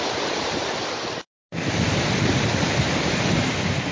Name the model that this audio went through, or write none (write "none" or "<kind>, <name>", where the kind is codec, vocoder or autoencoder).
vocoder, BigVGAN v2